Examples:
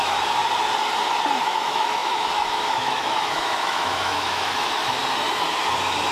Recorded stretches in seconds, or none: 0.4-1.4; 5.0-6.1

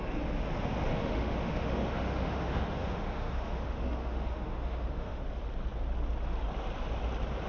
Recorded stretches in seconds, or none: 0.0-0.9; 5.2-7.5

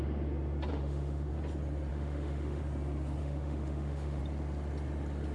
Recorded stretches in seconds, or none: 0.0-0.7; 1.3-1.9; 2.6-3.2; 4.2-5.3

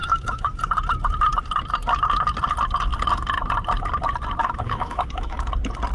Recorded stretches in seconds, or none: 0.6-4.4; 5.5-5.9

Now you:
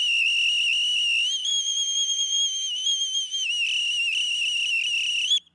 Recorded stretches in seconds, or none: 0.0-5.5

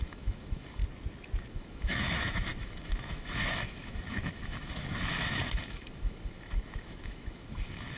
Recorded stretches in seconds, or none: 0.8-1.5

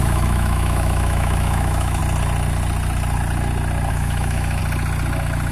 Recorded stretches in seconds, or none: 2.0-3.9; 4.6-5.5